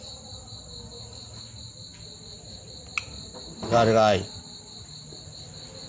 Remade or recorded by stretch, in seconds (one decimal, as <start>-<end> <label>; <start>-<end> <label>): 0.0-5.9 recorded